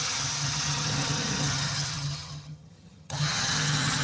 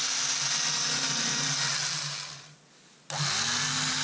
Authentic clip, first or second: second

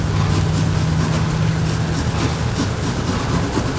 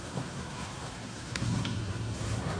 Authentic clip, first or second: first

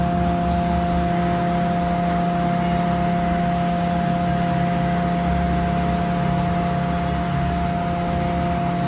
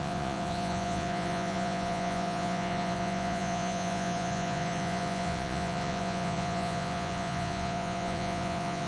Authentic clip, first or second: first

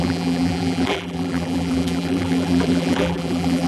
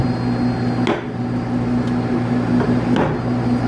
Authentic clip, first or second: second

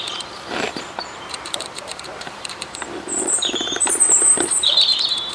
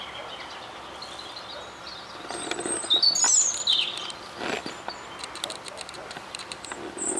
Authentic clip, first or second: second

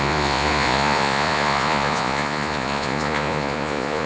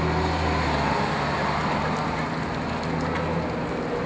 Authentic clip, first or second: second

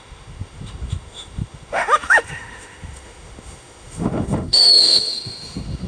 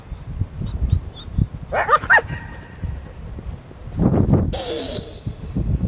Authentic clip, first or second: second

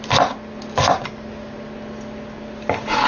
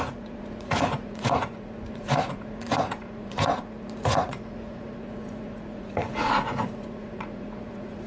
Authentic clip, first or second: first